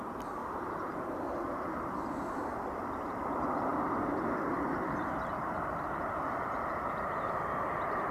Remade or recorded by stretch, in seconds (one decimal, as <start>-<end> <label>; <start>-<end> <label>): 0.0-5.3 remade; 5.3-6.8 recorded; 6.8-8.1 remade